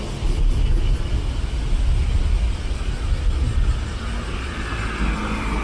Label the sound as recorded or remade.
recorded